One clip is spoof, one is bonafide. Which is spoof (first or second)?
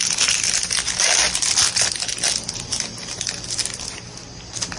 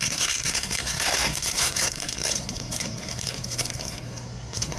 second